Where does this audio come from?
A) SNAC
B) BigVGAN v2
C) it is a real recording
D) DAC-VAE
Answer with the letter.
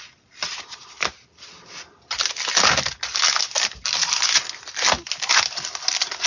C